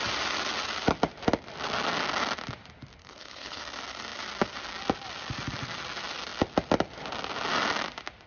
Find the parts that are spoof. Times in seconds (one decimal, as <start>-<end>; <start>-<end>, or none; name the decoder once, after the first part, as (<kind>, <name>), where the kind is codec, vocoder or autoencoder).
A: 3.0-3.6 (codec, HILCodec)

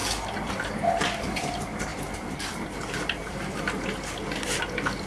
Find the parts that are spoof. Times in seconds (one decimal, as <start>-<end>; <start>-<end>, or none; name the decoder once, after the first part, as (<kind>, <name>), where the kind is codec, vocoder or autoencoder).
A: none

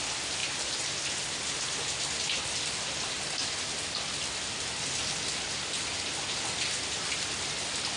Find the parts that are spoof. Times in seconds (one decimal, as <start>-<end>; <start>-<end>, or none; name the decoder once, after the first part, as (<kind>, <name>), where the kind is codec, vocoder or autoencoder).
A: none

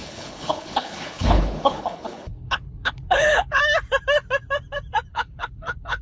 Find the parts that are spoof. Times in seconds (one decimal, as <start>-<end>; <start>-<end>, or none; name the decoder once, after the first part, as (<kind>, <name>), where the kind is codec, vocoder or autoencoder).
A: 0.0-3.6 (codec, HILCodec); 5.1-6.0

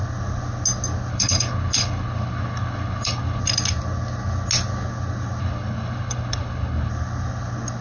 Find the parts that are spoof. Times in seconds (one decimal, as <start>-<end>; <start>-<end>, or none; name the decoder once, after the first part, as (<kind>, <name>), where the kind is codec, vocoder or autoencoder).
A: 1.1-3.4 (codec, HILCodec); 5.4-6.9

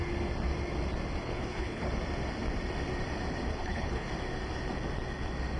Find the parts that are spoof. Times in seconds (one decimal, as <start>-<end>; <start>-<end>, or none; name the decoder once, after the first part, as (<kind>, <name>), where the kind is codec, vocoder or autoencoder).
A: 1.2-1.9 (codec, HILCodec); 3.5-4.1

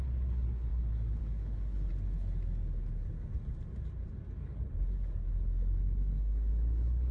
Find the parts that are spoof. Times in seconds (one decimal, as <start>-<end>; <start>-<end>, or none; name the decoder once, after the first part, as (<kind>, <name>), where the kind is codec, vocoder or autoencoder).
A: 0.0-1.9 (codec, HILCodec); 4.4-7.1

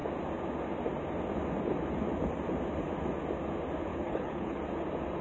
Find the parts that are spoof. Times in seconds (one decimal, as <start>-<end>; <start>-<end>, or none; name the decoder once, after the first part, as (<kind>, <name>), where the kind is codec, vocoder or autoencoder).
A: 3.9-4.6 (codec, HILCodec)